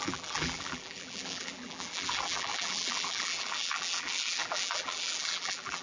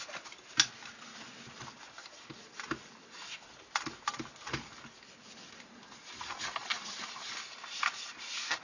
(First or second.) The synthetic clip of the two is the first